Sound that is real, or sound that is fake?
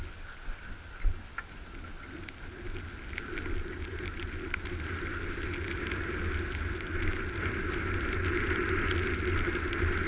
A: real